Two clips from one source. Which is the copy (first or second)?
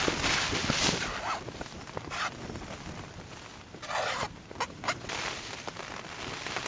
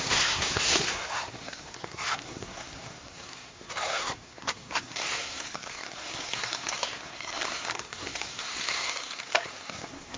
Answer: second